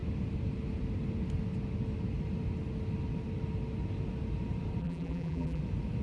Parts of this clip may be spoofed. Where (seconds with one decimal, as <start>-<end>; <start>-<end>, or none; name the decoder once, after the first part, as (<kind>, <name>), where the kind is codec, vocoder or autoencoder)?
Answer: 4.8-5.6 (vocoder, BigVGAN v2)